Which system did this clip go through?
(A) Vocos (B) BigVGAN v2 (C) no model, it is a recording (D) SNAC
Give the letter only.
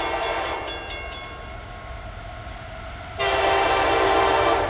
C